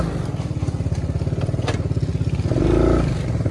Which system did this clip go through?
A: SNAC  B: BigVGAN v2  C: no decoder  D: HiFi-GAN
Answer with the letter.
C